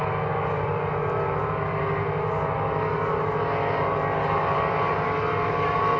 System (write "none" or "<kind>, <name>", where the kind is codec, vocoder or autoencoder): none